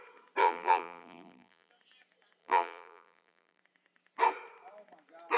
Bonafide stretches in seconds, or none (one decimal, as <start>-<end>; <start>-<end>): 0.0-0.4; 1.7-2.4; 3.6-5.4